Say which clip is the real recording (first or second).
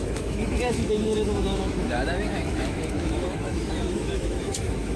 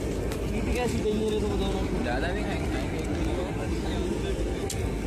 second